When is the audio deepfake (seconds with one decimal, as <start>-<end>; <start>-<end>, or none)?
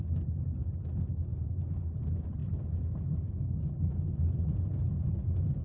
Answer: 1.3-2.0; 4.4-5.6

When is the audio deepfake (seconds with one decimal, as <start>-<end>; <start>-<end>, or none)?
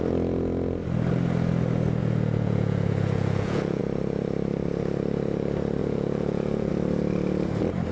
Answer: 2.0-3.8; 5.8-6.7